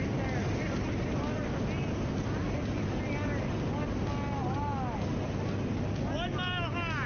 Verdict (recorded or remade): recorded